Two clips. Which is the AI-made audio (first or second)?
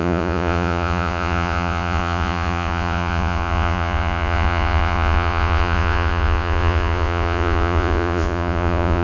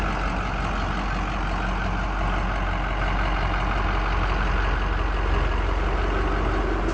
first